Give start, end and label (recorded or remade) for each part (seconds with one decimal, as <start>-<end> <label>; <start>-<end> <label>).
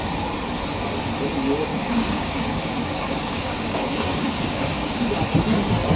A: 0.0-1.7 recorded; 1.7-5.0 remade; 5.0-6.0 recorded